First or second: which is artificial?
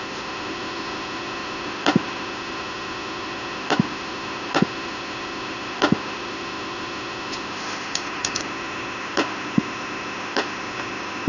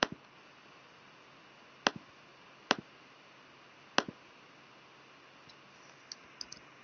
first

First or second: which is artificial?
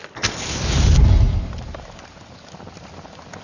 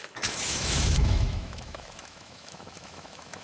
second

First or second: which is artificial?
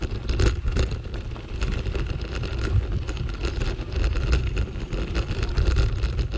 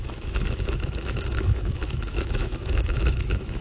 second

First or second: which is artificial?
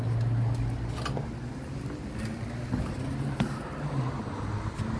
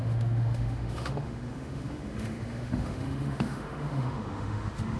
second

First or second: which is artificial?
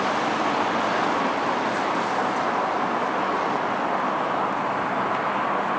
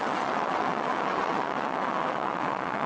second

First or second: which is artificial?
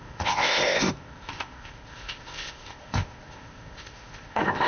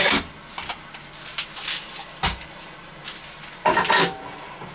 first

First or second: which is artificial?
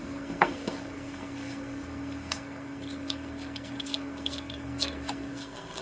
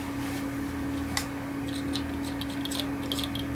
first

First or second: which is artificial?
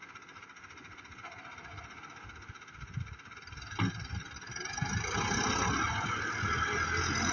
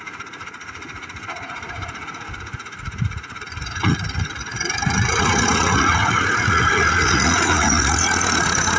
second